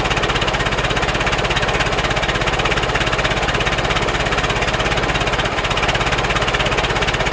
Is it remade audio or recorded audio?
recorded